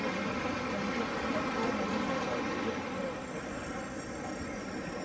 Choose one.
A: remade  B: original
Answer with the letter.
A